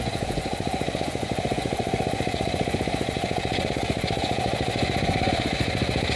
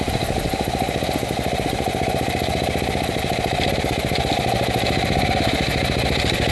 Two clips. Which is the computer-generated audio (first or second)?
first